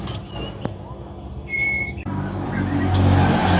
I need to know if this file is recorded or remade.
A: recorded